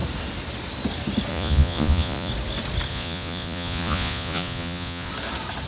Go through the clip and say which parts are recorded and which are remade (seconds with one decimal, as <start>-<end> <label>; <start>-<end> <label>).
0.0-1.3 recorded; 1.3-2.3 remade; 2.3-2.9 recorded; 2.9-5.1 remade; 5.1-5.7 recorded